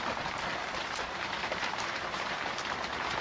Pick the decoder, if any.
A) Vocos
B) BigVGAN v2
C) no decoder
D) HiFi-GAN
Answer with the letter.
B